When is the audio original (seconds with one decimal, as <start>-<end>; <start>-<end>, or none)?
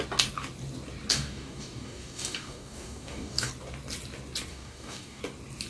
0.0-1.1; 3.5-4.5; 5.2-5.7